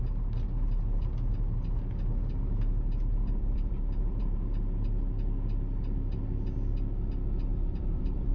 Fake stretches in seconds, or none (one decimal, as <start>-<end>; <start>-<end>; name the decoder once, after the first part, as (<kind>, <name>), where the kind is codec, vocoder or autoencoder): 3.1-4.2 (vocoder, BigVGAN v2); 7.5-8.3